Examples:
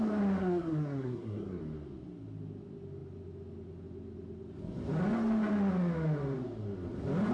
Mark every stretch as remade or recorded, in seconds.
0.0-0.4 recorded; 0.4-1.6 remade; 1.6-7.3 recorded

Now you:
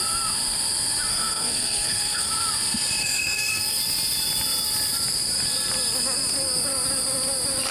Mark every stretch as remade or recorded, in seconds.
0.0-1.1 recorded; 1.1-2.3 remade; 2.3-3.0 recorded; 3.0-3.8 remade; 3.8-7.7 recorded

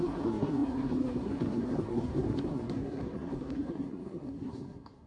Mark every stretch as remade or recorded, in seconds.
0.0-5.1 remade

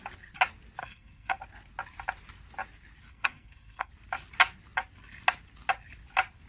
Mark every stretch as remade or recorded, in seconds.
0.0-0.8 recorded; 0.8-1.4 remade; 1.4-3.1 recorded; 3.1-3.9 remade; 3.9-6.5 recorded

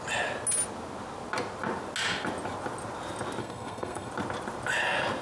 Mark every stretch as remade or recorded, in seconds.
0.0-3.4 recorded; 3.4-4.1 remade; 4.1-5.2 recorded